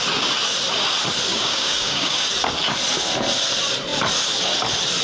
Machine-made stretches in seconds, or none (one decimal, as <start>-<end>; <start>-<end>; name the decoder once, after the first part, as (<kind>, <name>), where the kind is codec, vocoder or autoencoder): 1.3-2.3 (codec, DAC)